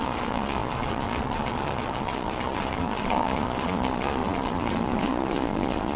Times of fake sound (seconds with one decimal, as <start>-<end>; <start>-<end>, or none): 0.0-6.0